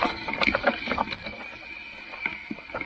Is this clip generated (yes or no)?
no